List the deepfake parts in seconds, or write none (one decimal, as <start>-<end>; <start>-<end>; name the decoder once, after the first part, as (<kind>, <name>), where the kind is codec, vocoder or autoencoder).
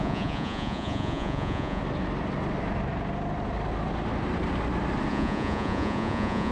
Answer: 0.0-1.8 (vocoder, Vocos); 5.1-6.5